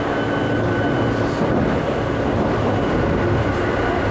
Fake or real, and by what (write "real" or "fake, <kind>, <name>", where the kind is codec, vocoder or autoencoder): real